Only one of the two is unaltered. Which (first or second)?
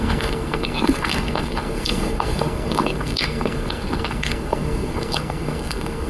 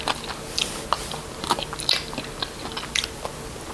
second